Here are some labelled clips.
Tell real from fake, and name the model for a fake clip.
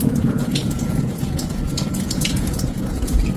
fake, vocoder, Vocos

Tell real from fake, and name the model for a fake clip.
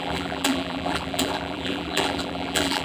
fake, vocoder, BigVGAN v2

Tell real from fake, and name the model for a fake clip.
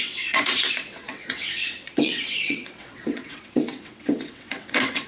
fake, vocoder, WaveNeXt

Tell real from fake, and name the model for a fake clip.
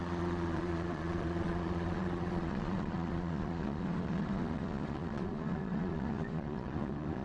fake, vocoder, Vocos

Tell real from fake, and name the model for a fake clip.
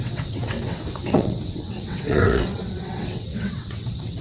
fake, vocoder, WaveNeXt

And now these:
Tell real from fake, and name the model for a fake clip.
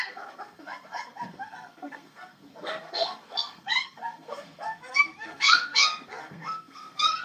fake, codec, SNAC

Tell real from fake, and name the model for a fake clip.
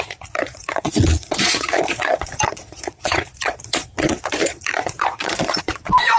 fake, vocoder, Vocos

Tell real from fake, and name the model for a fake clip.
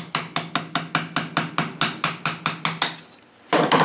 real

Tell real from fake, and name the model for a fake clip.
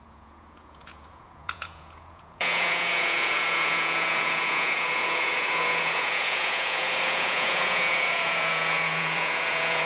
fake, vocoder, Vocos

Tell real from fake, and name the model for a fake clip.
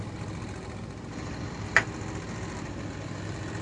fake, vocoder, BigVGAN v2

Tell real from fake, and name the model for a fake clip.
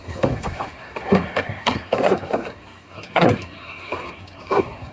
fake, codec, SNAC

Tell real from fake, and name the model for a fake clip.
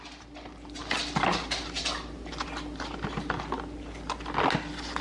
real